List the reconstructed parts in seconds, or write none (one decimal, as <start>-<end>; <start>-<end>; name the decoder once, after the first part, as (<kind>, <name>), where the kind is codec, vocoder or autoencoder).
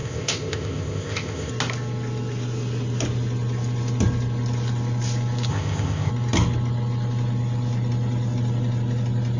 0.0-1.5 (codec, ZipCodec); 5.5-6.1